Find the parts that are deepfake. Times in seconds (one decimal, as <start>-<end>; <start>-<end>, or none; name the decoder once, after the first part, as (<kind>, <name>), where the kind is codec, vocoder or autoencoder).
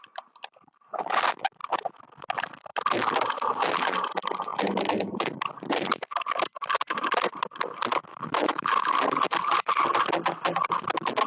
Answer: 8.1-8.9 (autoencoder, DAC-VAE)